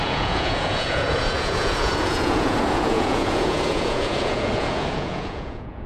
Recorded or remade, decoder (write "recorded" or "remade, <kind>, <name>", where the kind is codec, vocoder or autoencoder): remade, vocoder, Vocos